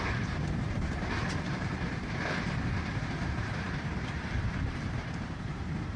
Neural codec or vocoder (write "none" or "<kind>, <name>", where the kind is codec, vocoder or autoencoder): vocoder, BigVGAN v2